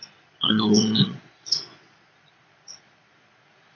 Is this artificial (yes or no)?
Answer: yes